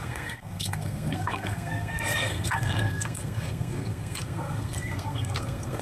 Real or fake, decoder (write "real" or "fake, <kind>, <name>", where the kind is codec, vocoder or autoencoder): fake, codec, SNAC